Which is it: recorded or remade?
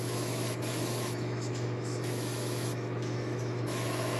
remade